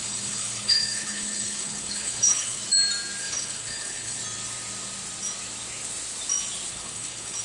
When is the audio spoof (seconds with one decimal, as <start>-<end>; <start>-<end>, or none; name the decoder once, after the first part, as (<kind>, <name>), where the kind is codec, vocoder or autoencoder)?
0.0-2.6 (codec, HILCodec); 3.2-4.2; 6.7-7.4